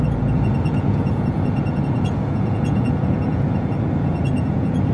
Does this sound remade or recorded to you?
remade